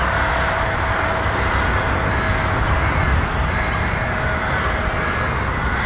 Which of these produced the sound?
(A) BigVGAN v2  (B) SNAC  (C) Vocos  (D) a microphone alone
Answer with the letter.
D